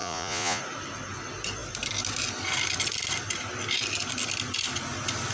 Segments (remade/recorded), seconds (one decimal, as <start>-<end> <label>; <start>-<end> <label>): 0.0-0.6 remade; 0.6-5.3 recorded